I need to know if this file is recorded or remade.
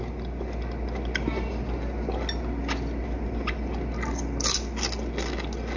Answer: recorded